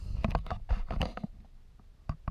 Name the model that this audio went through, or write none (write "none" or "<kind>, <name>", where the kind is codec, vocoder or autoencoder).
none